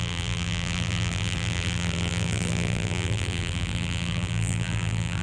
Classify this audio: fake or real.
fake